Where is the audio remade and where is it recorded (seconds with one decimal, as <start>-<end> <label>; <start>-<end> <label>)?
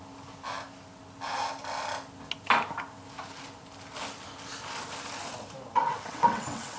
0.0-5.8 recorded; 5.8-6.8 remade